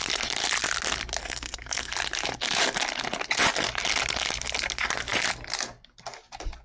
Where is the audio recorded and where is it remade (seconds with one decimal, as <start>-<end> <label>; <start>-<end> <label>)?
0.0-1.2 recorded; 1.2-1.9 remade; 1.9-6.6 recorded